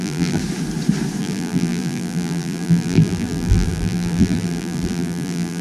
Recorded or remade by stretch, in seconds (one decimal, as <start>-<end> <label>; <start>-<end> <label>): 0.0-0.4 remade; 0.4-1.2 recorded; 1.2-5.6 remade